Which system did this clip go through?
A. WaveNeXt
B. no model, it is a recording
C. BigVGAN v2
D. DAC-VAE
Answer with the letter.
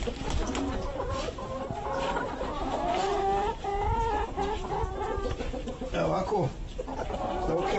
C